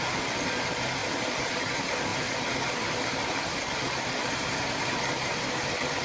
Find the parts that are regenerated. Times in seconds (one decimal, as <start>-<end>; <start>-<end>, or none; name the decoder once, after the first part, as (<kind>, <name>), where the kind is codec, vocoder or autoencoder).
1.0-1.5 (vocoder, BigVGAN v2); 2.1-6.0